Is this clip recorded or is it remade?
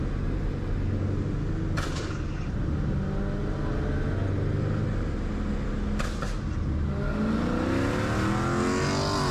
recorded